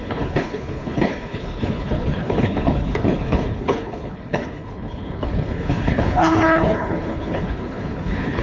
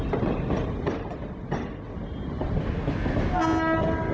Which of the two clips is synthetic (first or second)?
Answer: first